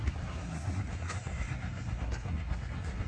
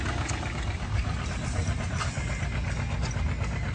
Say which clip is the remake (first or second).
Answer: first